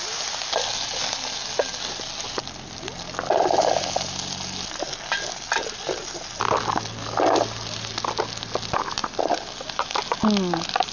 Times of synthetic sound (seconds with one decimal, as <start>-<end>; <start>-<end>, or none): none